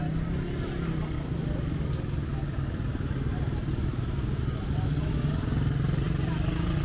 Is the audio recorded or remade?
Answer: recorded